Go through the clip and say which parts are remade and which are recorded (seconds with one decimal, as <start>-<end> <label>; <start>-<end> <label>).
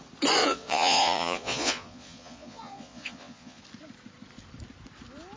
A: 0.0-0.4 recorded; 0.4-3.6 remade; 3.6-5.4 recorded